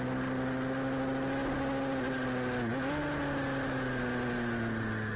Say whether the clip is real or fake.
real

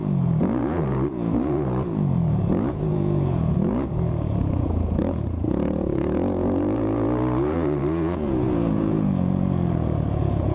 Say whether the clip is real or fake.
fake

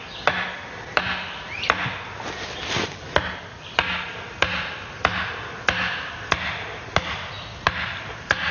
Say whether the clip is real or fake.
real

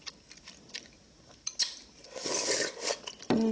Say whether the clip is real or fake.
real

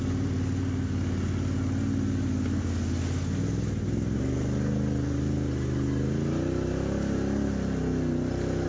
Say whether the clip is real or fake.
real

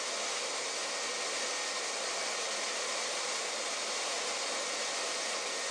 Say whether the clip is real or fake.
real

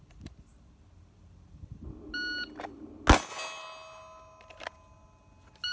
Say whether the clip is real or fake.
real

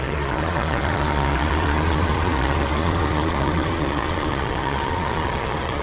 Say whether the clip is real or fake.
fake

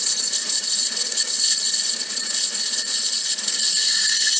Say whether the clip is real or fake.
fake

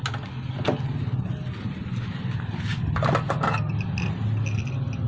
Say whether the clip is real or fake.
real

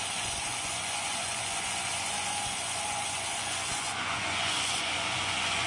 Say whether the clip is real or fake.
fake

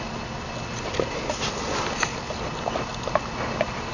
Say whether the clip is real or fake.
real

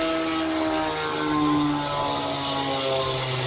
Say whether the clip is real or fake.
real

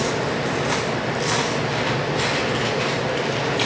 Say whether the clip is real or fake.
real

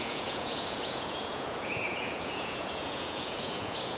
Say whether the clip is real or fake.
fake